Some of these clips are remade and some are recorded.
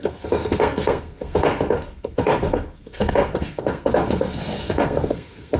remade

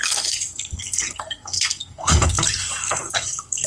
remade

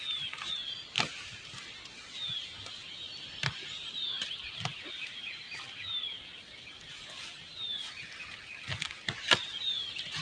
recorded